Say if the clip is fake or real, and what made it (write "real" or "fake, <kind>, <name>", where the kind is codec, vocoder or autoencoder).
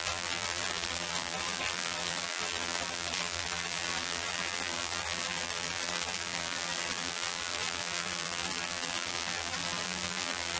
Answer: fake, vocoder, BigVGAN v2